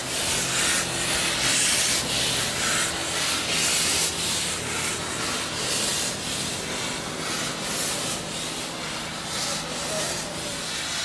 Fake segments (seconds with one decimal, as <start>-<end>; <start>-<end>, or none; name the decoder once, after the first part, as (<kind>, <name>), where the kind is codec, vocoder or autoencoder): none